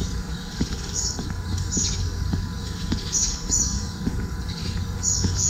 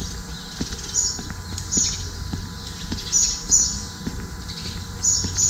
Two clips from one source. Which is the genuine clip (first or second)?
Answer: second